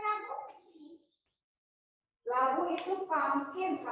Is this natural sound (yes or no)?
no